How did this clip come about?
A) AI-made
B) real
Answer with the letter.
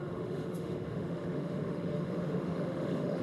A